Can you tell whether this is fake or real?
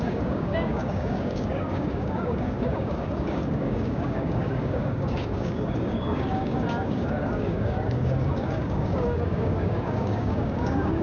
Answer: fake